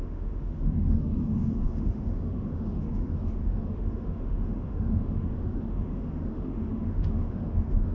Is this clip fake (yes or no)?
yes